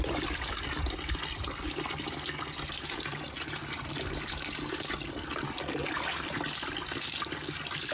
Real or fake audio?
real